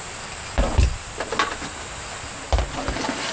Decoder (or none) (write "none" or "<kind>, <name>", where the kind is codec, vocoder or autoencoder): none